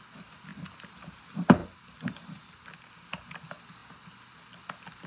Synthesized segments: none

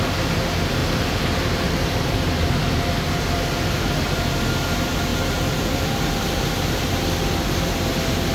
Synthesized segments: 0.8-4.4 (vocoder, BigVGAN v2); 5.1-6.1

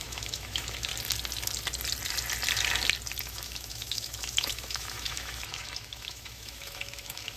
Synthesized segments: 0.0-0.9 (autoencoder, DAC-VAE); 3.2-7.4

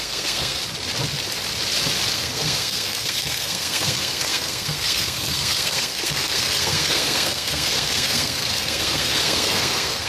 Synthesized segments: 0.0-0.6 (codec, SNAC); 2.1-10.1

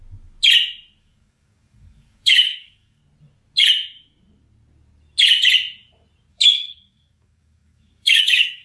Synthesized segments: 1.0-3.0 (codec, DAC); 6.3-8.6

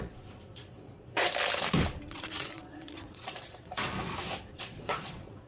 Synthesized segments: 0.0-1.3 (vocoder, Vocos); 2.1-3.8; 4.5-5.5